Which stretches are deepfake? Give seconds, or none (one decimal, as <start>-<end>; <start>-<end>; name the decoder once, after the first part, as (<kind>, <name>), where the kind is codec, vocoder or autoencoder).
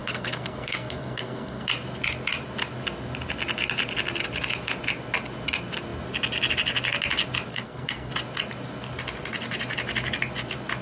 0.0-1.7 (codec, SNAC); 7.5-8.1